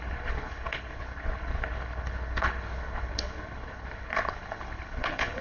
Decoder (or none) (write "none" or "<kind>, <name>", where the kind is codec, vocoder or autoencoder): codec, HILCodec